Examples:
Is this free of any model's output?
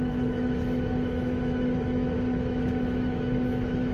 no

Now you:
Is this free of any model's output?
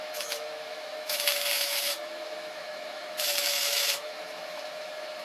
no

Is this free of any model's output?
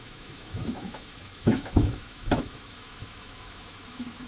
no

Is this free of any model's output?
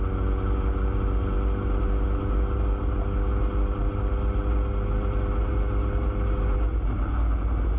yes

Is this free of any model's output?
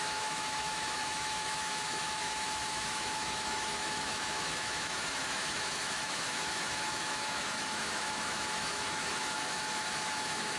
no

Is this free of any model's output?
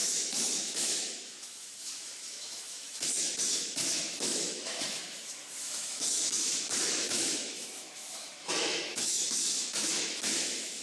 no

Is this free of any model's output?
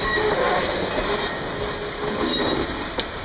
yes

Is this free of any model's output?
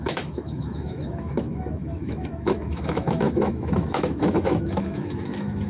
no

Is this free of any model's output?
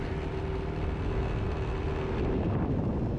yes